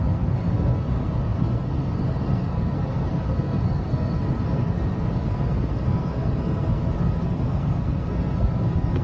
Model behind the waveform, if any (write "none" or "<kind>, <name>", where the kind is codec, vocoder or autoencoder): codec, SNAC